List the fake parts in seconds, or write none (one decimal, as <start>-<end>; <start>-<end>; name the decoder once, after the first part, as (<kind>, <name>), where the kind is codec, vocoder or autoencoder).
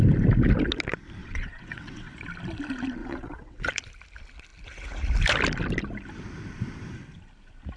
1.2-2.1 (vocoder, WaveNeXt); 3.0-3.7